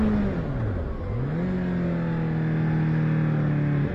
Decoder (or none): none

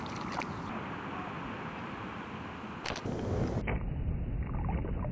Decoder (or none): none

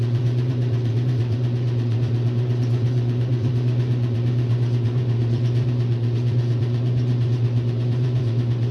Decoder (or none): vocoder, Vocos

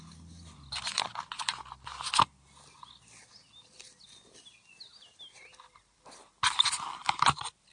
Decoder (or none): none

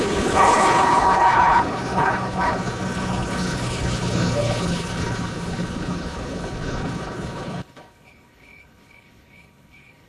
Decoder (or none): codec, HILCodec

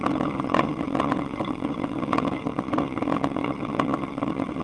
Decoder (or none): vocoder, WaveNeXt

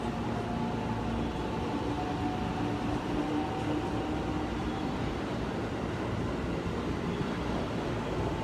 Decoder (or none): none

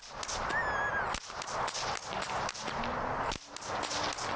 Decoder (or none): none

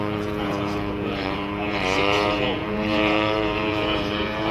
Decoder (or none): vocoder, Vocos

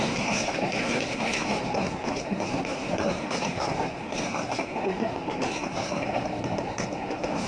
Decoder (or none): codec, SNAC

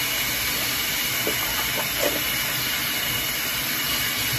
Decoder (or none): none